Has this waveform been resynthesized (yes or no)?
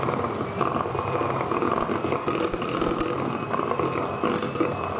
no